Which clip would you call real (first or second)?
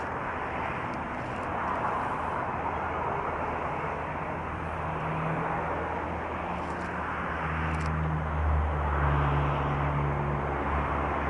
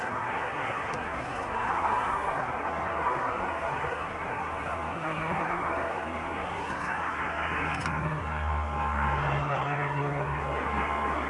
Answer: first